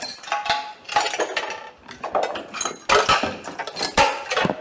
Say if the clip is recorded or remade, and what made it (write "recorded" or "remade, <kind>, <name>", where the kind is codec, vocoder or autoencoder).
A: recorded